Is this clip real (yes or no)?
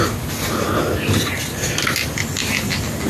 yes